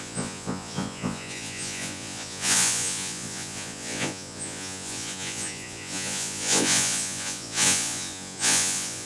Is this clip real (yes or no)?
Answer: no